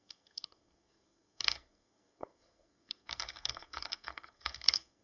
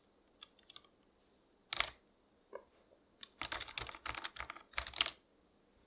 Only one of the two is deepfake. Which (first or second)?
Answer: first